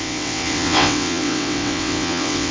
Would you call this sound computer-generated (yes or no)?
yes